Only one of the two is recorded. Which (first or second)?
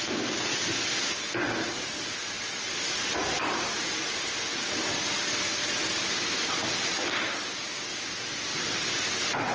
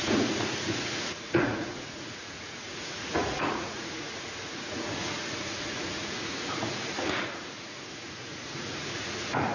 first